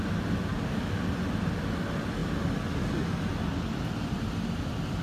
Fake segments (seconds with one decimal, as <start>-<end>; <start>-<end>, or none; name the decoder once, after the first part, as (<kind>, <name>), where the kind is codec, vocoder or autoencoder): 0.5-1.0 (codec, DAC)